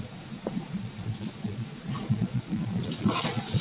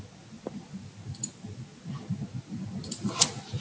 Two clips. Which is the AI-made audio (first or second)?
first